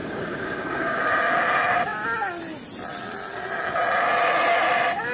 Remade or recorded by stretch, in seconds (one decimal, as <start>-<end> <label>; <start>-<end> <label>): 0.0-1.0 remade; 1.0-5.1 recorded